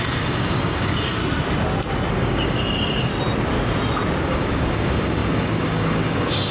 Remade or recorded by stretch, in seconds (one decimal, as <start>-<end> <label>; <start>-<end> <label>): 0.0-1.2 remade; 1.2-2.1 recorded; 2.1-3.1 remade; 3.1-4.2 recorded; 4.2-6.5 remade